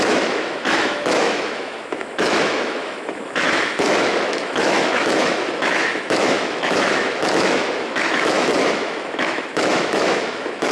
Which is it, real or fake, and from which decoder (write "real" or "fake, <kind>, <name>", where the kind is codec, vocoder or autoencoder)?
fake, autoencoder, DAC-VAE